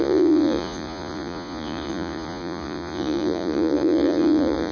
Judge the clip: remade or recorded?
remade